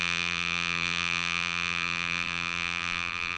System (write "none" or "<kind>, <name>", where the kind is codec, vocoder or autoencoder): vocoder, BigVGAN v2